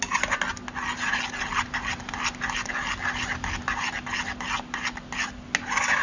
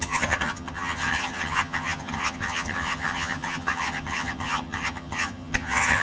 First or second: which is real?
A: first